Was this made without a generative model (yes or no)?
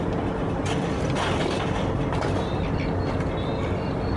yes